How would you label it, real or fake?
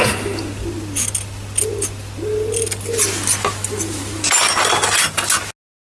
real